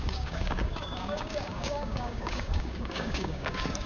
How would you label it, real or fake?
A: fake